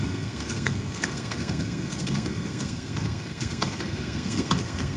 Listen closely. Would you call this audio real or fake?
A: fake